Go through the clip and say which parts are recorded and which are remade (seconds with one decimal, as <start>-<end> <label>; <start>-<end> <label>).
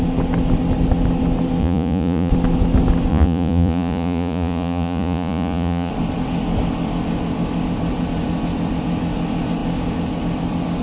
0.0-1.6 recorded; 1.6-2.3 remade; 2.3-3.1 recorded; 3.1-5.9 remade; 5.9-10.8 recorded